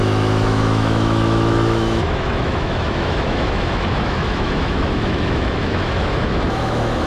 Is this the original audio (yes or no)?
no